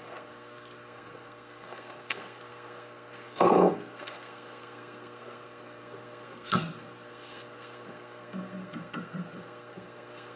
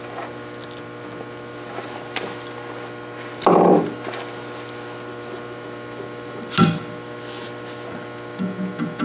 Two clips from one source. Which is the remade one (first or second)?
first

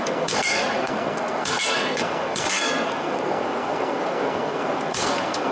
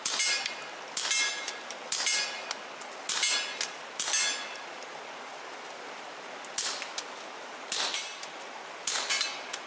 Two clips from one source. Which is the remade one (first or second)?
first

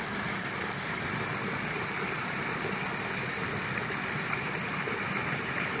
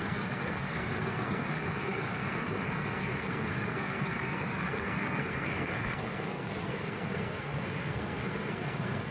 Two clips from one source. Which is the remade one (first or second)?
second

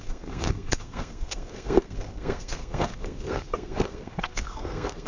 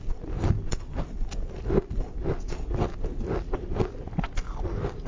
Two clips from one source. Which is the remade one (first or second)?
first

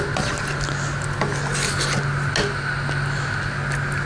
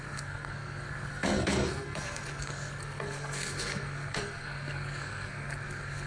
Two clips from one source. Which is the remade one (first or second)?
second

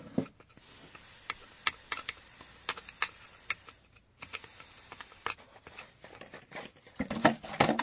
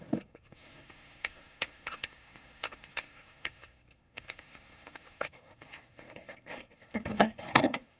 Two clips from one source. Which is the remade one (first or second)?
second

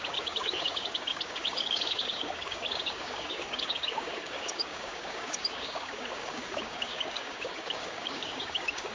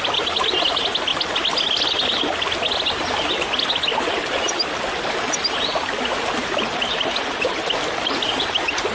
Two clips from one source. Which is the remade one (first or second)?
first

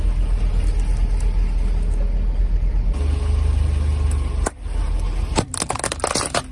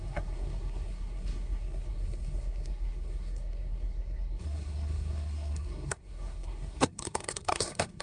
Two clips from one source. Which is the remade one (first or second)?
second